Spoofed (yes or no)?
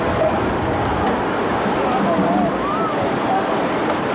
no